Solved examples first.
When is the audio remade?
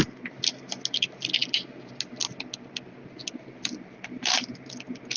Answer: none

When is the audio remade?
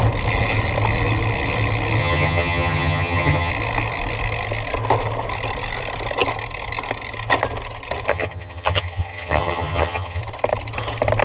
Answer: 2.0-3.5 (vocoder, HiFi-GAN); 8.1-10.2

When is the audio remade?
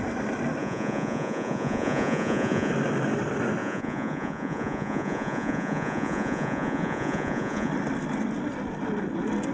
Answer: 0.6-2.7 (vocoder, Vocos); 3.6-7.7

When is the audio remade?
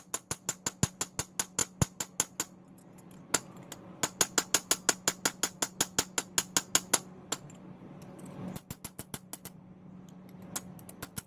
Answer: none